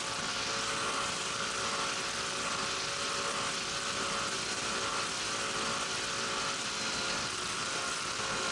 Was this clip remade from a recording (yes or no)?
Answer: no